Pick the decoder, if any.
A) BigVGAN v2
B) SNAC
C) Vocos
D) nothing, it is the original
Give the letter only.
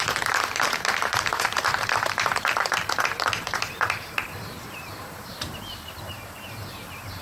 A